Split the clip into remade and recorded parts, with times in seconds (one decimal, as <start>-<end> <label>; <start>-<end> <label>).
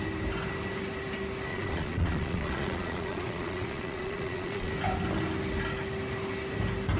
0.0-1.5 recorded; 1.5-4.7 remade; 4.7-7.0 recorded